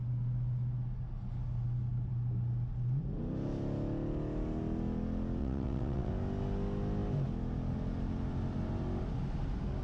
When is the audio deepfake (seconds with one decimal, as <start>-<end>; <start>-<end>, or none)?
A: 5.4-6.1